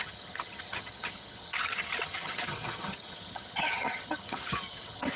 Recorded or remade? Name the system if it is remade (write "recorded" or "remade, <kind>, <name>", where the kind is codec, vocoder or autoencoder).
remade, vocoder, HiFi-GAN